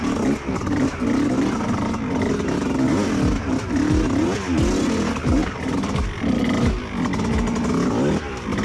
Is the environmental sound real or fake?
real